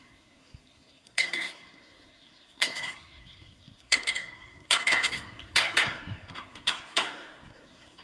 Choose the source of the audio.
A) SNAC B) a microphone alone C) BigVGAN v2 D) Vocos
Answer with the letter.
A